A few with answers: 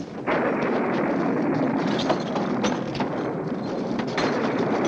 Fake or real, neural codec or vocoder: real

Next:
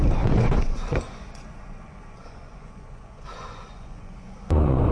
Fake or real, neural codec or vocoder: fake, vocoder, Vocos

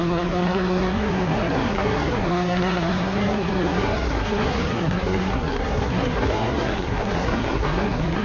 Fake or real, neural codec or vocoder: fake, codec, SNAC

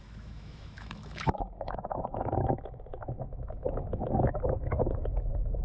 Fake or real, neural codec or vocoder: fake, autoencoder, DAC-VAE